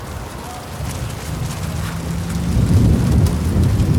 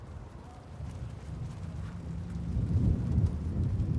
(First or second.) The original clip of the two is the first